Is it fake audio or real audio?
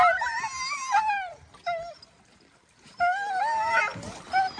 real